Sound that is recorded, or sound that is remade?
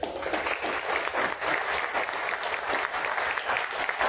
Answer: recorded